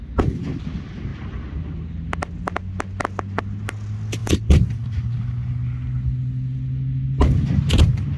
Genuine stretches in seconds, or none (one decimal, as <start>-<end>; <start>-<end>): 0.0-4.2; 5.2-8.2